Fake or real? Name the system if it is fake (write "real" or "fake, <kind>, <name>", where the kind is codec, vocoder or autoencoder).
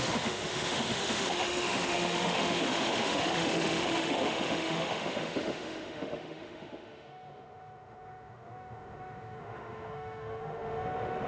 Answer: fake, autoencoder, DAC-VAE